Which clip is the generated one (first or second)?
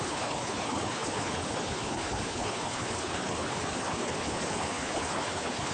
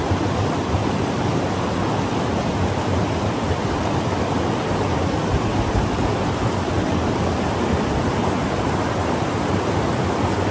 first